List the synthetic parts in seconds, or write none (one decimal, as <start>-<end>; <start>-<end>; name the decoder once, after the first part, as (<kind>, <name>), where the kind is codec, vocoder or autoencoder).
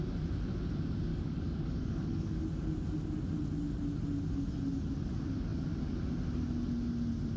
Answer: 1.1-2.4 (codec, DAC)